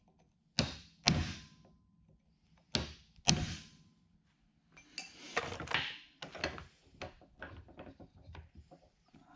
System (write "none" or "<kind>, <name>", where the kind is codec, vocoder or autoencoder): none